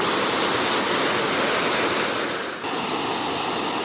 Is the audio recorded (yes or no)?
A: yes